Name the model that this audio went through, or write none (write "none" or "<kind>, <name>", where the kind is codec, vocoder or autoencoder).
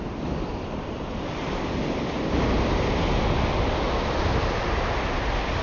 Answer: none